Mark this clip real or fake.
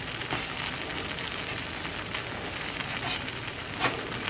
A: real